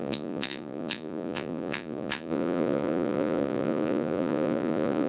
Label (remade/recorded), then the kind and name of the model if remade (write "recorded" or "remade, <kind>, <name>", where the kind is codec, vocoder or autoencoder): remade, vocoder, Vocos